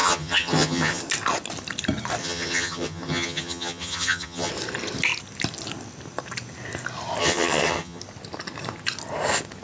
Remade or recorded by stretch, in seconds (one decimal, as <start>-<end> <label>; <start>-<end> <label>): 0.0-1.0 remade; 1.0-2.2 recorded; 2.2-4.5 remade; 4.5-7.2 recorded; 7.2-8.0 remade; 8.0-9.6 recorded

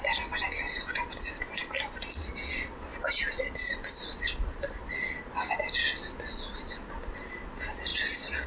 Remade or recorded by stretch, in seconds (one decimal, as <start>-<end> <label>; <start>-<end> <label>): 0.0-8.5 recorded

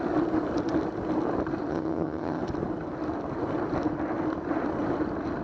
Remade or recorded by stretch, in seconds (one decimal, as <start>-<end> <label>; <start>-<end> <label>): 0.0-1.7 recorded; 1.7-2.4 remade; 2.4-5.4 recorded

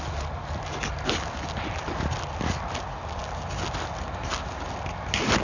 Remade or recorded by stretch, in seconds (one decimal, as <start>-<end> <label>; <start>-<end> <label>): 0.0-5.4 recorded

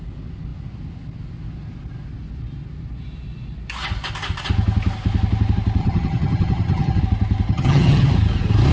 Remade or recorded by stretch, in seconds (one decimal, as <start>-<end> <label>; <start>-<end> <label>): 0.0-5.8 recorded; 5.8-7.0 remade; 7.0-7.5 recorded; 7.5-8.1 remade; 8.1-8.7 recorded

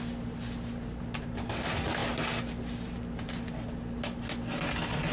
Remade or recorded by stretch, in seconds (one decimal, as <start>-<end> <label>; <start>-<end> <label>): 0.0-5.1 recorded